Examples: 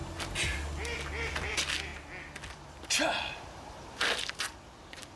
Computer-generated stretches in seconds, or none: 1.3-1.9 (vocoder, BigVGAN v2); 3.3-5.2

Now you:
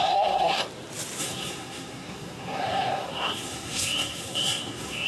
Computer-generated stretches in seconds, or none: 0.0-0.6 (codec, SNAC); 1.2-5.1

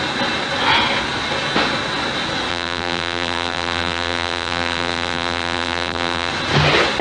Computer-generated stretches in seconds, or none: 2.5-6.3 (vocoder, BigVGAN v2)

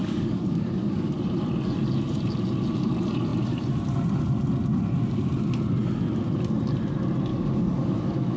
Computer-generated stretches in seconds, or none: 0.0-1.1 (codec, DAC); 7.3-8.4

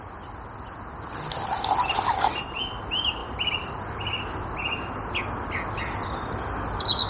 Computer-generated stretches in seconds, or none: none

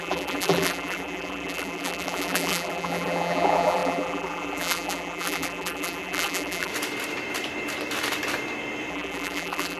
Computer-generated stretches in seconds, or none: 0.0-6.7 (vocoder, BigVGAN v2); 8.9-9.8